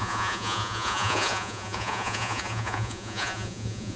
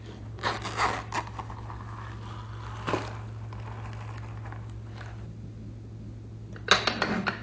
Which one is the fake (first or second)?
first